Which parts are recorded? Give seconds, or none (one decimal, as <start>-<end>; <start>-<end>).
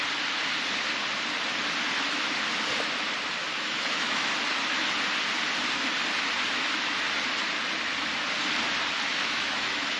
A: 0.0-3.4; 4.3-9.1